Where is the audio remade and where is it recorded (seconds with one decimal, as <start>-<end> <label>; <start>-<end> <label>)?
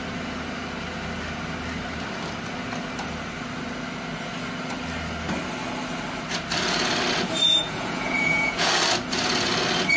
0.0-7.4 recorded; 7.4-8.7 remade; 8.7-10.0 recorded